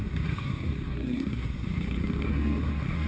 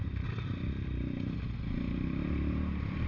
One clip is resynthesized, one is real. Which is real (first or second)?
second